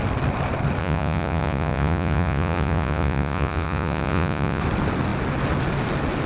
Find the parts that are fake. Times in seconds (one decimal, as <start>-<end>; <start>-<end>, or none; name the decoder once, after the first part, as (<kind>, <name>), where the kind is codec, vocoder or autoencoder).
0.8-4.6 (vocoder, Vocos)